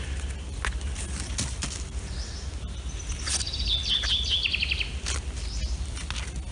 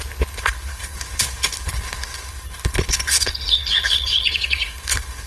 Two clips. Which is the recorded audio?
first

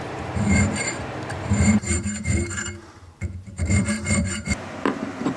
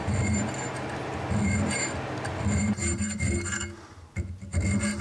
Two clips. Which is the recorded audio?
second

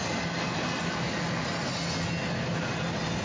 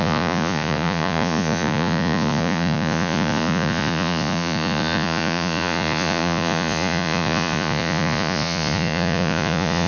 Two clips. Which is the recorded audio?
first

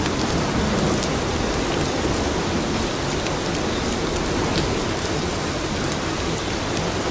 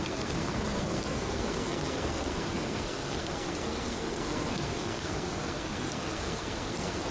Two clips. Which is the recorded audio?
first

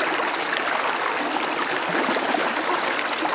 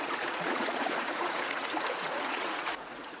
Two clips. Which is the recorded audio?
first